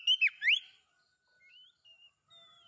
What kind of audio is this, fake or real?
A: real